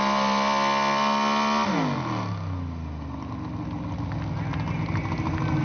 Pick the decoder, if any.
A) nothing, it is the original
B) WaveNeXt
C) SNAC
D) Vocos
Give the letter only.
A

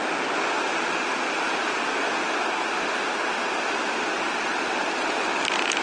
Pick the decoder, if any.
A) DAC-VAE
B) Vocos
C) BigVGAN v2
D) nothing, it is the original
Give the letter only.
D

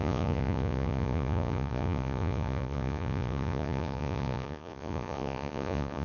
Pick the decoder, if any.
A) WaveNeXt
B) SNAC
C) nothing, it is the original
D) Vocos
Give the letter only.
D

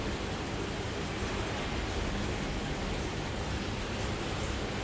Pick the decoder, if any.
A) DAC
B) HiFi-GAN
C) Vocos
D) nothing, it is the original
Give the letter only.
D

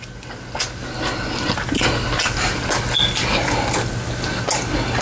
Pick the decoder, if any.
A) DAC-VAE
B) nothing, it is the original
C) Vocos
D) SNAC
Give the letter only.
B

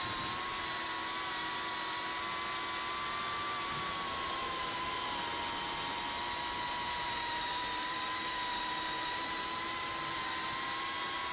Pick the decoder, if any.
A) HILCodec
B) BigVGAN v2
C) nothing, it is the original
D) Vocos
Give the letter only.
C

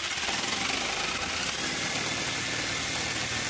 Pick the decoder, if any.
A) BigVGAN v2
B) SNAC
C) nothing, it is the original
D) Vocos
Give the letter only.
C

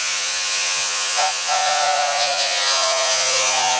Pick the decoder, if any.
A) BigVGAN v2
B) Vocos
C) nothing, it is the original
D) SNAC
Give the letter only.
B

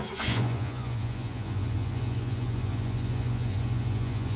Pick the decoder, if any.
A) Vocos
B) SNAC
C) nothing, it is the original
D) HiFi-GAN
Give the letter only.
A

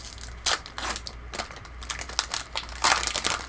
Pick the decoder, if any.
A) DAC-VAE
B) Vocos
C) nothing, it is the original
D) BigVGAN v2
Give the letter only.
C